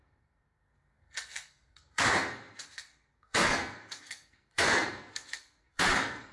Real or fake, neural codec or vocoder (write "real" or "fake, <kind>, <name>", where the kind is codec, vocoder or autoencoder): fake, codec, SNAC